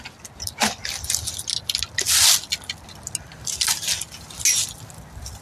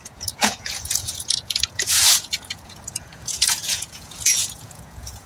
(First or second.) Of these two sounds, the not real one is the second